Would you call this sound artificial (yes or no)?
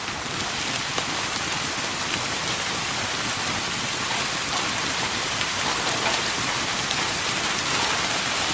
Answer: yes